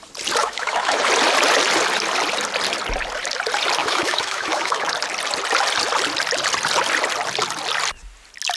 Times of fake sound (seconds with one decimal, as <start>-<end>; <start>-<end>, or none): 0.4-1.0; 3.8-4.9